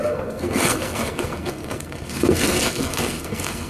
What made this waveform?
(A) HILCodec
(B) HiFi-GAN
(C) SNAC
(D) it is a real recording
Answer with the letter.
C